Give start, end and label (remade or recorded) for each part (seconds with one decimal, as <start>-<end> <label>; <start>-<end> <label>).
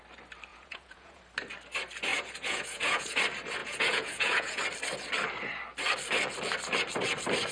0.0-0.5 recorded; 0.5-1.2 remade; 1.2-2.1 recorded; 2.1-3.2 remade; 3.2-3.6 recorded; 3.6-4.6 remade; 4.6-7.5 recorded